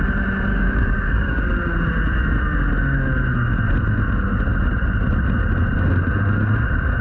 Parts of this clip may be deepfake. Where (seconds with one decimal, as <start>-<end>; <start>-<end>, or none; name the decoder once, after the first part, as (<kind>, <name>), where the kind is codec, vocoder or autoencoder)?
0.5-1.4 (codec, DAC)